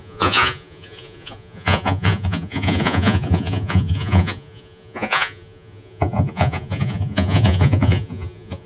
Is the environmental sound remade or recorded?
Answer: remade